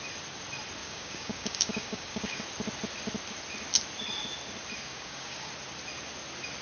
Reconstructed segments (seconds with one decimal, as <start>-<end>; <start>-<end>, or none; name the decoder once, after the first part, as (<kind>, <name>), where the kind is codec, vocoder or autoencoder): 0.8-2.4 (codec, DAC); 4.9-5.5